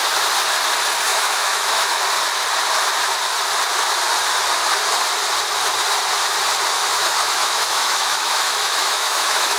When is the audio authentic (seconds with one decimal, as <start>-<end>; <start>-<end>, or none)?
0.0-1.1; 2.0-6.8